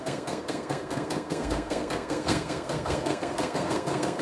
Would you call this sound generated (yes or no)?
yes